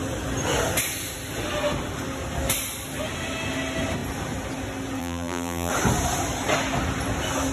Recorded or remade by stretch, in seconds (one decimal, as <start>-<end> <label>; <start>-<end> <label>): 0.0-5.0 recorded; 5.0-5.7 remade; 5.7-7.5 recorded